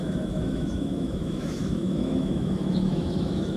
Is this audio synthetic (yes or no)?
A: yes